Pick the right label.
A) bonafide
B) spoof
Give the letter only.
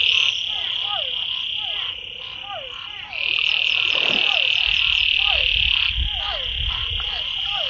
A